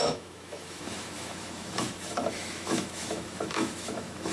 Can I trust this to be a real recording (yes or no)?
no